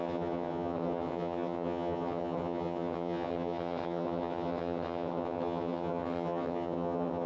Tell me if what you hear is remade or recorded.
remade